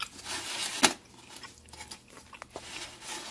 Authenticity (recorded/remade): recorded